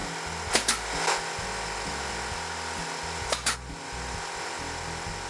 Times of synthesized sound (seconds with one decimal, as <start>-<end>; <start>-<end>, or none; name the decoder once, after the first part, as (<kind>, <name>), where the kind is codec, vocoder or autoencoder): none